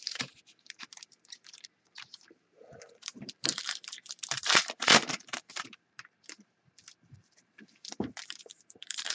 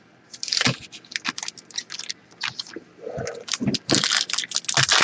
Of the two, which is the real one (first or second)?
second